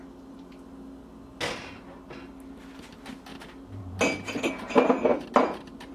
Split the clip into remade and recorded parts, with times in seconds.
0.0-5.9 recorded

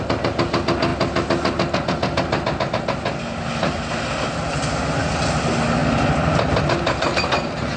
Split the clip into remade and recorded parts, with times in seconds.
0.0-7.8 recorded